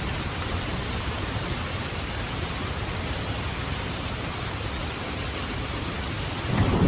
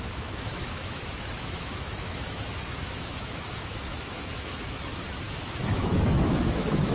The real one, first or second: first